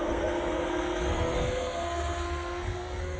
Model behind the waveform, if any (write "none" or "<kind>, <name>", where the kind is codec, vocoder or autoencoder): codec, SNAC